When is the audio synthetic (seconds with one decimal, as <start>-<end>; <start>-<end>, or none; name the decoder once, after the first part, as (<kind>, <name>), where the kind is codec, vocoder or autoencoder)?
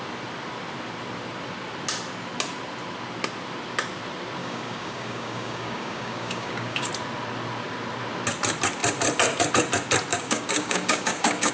4.4-6.9 (codec, DAC); 10.1-11.5